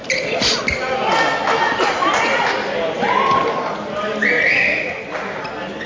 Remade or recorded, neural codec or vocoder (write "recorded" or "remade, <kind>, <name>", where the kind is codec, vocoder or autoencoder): recorded